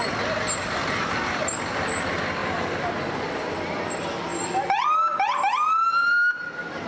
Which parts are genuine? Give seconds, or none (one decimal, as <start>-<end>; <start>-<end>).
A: 0.0-0.6; 1.4-2.4; 3.6-6.9